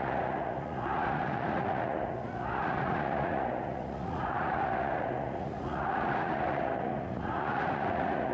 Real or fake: fake